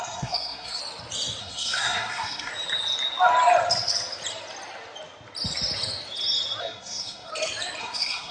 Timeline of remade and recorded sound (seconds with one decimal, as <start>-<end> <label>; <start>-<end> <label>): 0.0-0.8 remade; 0.8-1.4 recorded; 1.4-2.5 remade; 2.5-6.6 recorded; 6.6-7.3 remade; 7.3-7.8 recorded; 7.8-8.3 remade